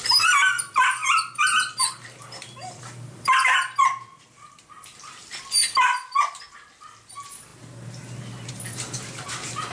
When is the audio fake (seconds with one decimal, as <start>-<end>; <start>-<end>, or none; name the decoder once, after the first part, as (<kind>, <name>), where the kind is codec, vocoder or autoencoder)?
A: 0.0-5.8 (vocoder, BigVGAN v2); 7.1-7.5; 8.5-9.7